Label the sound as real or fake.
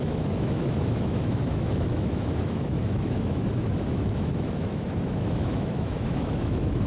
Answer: fake